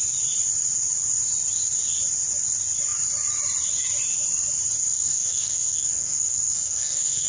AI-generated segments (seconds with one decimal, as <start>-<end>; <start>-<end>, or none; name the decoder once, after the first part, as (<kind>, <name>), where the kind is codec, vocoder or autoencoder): 4.8-7.3 (codec, SNAC)